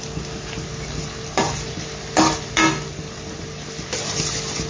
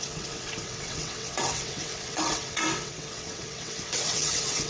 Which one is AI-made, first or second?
second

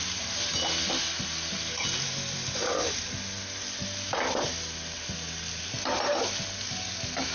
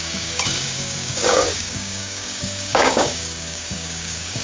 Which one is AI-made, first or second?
second